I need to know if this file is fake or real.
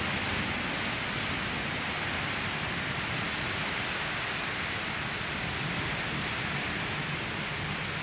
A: real